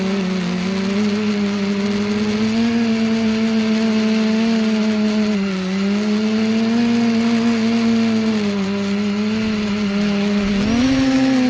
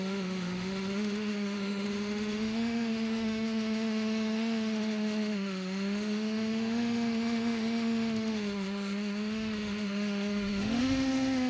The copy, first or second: second